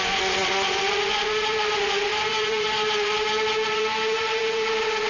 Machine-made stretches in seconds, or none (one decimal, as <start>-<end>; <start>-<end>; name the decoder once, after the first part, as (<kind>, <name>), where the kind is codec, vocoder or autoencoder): 0.0-5.1 (vocoder, Vocos)